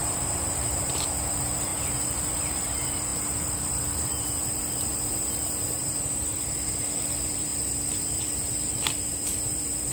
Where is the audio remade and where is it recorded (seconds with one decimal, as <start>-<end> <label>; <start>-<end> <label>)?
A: 0.0-3.1 remade; 3.1-3.8 recorded; 3.8-9.9 remade

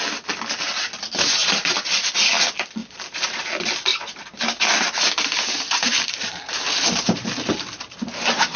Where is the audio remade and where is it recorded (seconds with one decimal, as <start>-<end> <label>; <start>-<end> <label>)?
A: 0.0-1.4 recorded; 1.4-2.1 remade; 2.1-2.8 recorded; 2.8-3.5 remade; 3.5-3.9 recorded; 3.9-8.6 remade

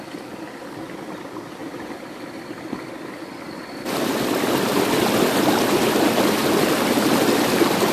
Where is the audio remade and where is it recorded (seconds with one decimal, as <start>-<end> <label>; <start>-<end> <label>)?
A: 0.0-7.9 recorded

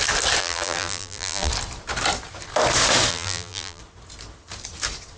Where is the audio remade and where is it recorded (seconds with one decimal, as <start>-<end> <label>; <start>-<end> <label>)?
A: 0.0-0.4 recorded; 0.4-1.5 remade; 1.5-3.1 recorded; 3.1-3.8 remade; 3.8-5.2 recorded